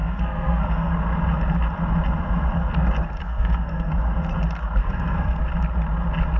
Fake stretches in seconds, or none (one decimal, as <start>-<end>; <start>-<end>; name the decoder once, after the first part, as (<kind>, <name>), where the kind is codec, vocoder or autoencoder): 0.0-0.9 (codec, SNAC); 3.2-3.9; 4.8-5.4